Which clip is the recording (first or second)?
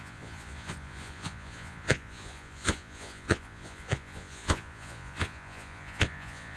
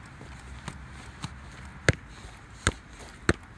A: second